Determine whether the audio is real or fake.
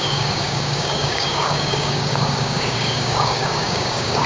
fake